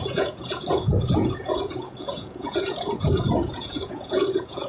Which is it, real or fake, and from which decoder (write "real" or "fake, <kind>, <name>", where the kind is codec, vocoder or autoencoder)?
fake, vocoder, Vocos